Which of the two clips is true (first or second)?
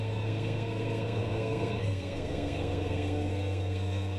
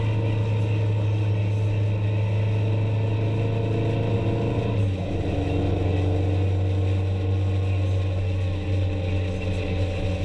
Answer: second